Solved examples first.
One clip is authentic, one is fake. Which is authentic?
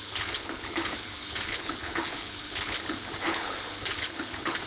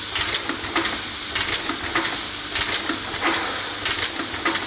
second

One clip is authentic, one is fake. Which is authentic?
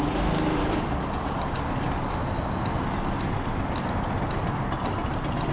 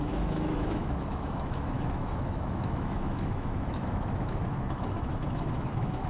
first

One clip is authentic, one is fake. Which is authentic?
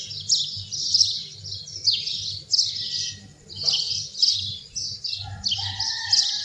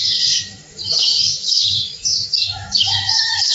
first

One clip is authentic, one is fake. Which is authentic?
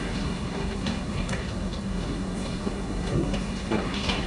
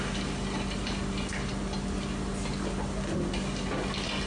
second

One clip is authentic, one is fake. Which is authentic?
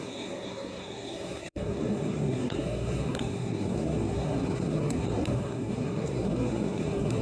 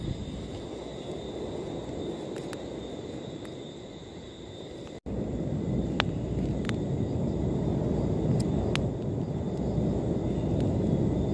second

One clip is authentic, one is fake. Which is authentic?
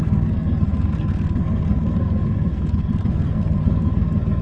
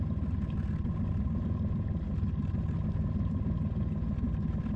second